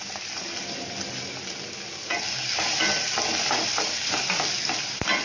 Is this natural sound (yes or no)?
yes